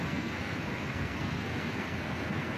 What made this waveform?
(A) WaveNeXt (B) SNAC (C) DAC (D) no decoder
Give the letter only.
B